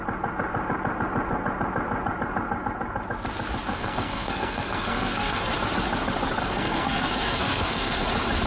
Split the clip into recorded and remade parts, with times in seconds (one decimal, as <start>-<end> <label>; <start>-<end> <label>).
0.0-3.7 recorded; 3.7-5.5 remade; 5.5-6.4 recorded; 6.4-8.0 remade; 8.0-8.5 recorded